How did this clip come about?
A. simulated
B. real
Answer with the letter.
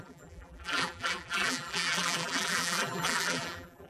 A